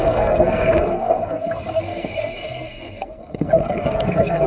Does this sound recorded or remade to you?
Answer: remade